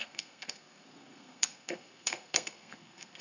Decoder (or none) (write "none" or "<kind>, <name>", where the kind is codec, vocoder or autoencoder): codec, SNAC